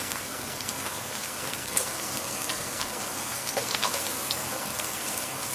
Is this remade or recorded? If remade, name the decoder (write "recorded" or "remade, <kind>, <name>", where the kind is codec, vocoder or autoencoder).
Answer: remade, codec, SNAC